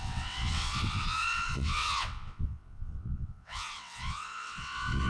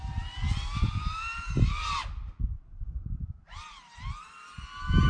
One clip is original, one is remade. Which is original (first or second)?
second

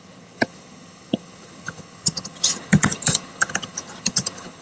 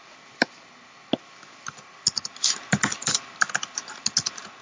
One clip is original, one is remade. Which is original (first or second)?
second